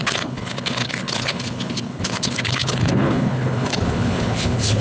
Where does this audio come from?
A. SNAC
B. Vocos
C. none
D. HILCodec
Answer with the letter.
D